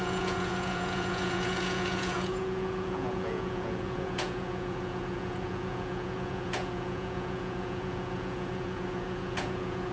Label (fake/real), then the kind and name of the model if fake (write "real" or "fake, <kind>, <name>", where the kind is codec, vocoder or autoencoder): fake, vocoder, Vocos